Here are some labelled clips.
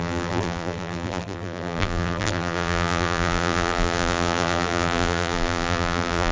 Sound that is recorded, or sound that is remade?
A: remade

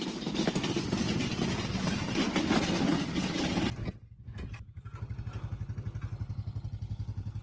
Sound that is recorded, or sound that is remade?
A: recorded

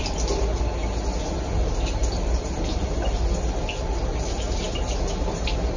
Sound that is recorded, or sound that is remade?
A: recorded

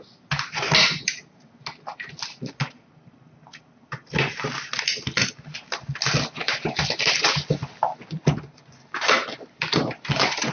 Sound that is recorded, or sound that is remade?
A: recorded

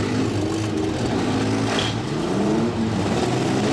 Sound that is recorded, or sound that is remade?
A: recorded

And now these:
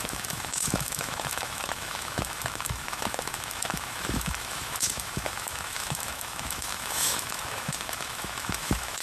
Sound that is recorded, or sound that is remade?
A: remade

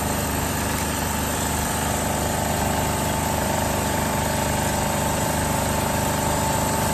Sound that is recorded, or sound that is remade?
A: remade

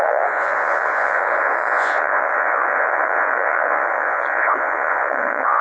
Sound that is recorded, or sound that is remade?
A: remade